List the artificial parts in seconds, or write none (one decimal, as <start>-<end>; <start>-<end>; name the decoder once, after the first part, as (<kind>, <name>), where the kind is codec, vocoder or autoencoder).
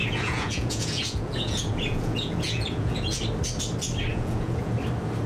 0.0-3.2 (vocoder, Vocos); 4.1-4.7